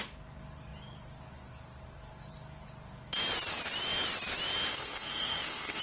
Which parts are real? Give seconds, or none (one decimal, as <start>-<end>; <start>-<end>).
0.0-4.7